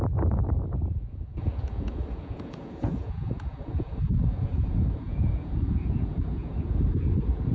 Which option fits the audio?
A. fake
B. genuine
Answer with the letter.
A